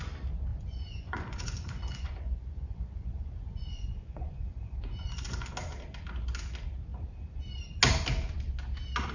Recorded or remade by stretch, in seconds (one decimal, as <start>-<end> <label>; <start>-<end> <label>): 0.0-0.5 recorded; 0.5-5.5 remade; 5.5-9.1 recorded